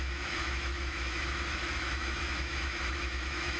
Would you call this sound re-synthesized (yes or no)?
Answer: yes